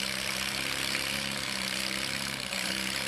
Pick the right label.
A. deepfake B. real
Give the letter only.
A